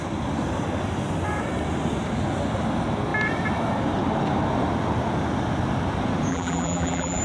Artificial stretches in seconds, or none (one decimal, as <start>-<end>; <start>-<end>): 6.3-7.2